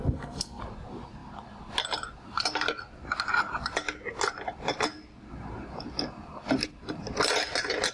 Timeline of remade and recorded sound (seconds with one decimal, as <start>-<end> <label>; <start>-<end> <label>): 0.0-0.6 remade; 0.6-7.9 recorded